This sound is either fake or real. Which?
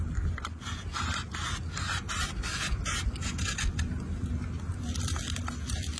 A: real